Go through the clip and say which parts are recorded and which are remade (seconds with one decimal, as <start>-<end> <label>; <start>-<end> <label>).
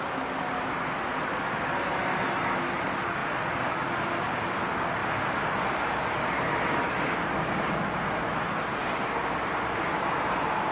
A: 0.0-10.7 recorded